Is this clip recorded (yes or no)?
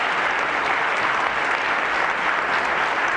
yes